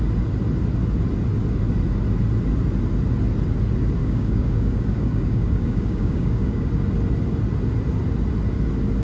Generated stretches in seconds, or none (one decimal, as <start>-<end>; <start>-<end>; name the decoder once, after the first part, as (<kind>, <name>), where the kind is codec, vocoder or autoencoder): 4.0-6.7 (codec, DAC)